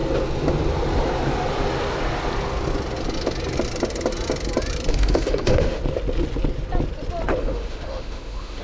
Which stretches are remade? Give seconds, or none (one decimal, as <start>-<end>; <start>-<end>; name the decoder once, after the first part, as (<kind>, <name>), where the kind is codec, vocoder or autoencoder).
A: 4.9-5.8 (autoencoder, DAC-VAE); 7.4-8.6